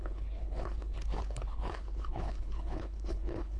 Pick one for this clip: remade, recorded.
remade